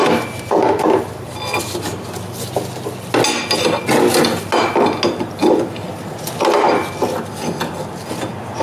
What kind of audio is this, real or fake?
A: real